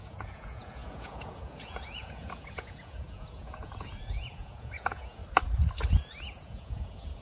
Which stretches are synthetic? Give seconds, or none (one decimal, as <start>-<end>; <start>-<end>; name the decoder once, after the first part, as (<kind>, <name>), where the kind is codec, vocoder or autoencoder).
0.0-5.2 (vocoder, Vocos); 5.9-7.2